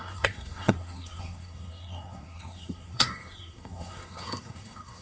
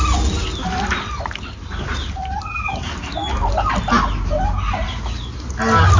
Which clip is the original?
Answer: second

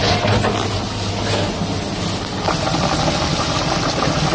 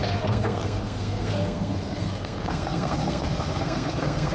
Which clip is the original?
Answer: first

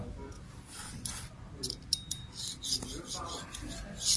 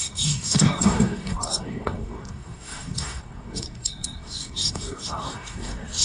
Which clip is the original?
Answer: first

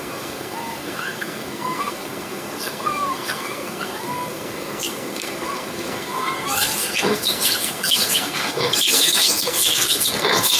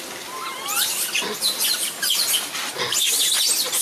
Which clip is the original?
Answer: second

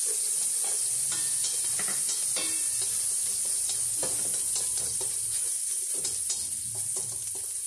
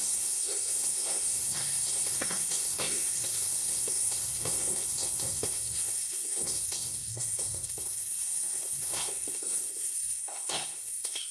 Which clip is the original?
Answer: first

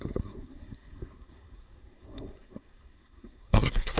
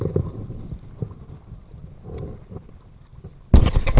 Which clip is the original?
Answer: second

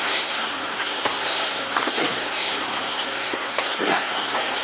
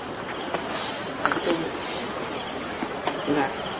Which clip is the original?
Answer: second